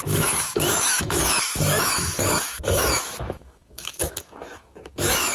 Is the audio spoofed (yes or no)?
yes